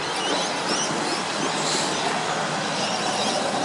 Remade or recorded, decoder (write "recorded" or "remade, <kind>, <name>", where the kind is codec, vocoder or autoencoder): recorded